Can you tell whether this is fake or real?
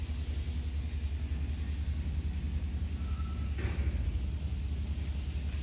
real